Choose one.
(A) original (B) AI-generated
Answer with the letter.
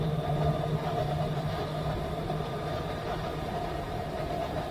B